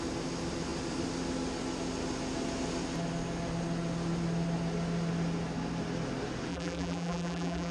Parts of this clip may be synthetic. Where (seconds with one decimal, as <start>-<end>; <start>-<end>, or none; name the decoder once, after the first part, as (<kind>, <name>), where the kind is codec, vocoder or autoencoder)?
6.5-7.7 (vocoder, BigVGAN v2)